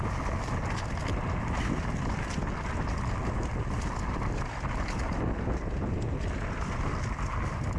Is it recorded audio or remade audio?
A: recorded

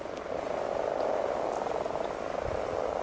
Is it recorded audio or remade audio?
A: recorded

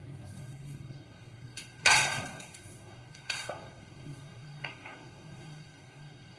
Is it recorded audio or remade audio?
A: remade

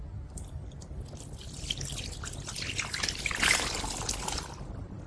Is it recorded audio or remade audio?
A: recorded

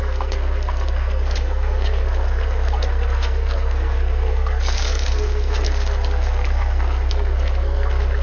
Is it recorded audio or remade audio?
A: remade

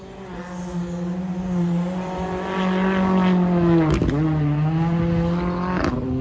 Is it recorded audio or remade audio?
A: recorded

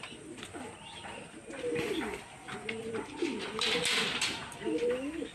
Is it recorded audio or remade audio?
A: recorded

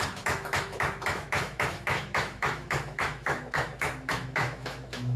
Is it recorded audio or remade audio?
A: remade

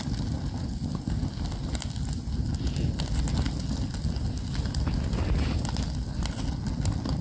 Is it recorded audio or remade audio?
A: recorded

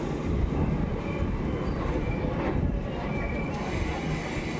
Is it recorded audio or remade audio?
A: recorded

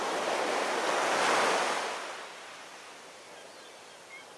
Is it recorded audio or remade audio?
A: recorded